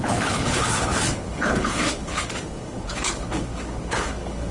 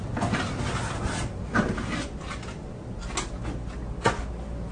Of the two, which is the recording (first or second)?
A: second